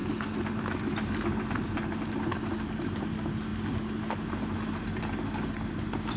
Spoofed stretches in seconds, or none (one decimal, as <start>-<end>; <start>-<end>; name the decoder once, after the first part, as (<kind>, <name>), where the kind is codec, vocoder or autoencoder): none